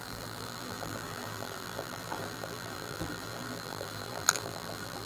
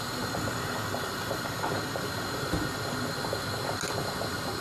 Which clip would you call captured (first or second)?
second